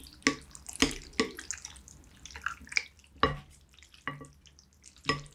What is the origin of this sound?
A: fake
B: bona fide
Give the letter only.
B